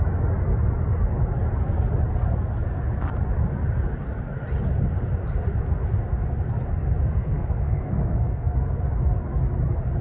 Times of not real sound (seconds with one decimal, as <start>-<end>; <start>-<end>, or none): 7.2-8.8